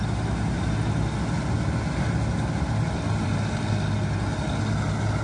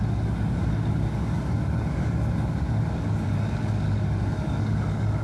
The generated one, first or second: second